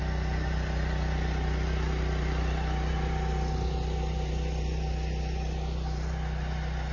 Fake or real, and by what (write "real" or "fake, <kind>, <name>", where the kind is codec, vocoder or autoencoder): real